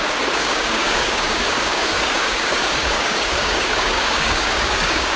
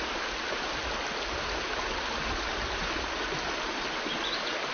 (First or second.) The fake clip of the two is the first